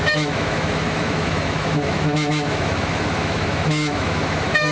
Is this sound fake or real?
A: fake